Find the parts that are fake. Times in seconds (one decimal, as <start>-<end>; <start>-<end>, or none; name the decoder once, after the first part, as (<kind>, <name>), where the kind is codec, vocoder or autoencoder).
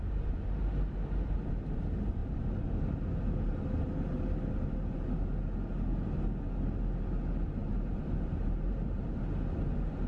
7.6-9.2 (vocoder, BigVGAN v2)